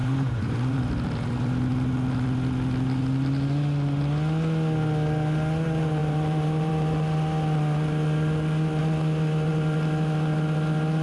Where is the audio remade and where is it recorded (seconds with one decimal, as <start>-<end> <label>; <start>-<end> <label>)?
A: 0.0-0.8 remade; 0.8-6.0 recorded; 6.0-6.7 remade; 6.7-11.0 recorded